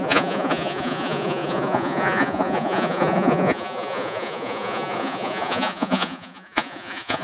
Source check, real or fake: fake